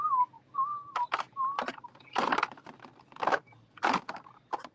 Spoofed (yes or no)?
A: no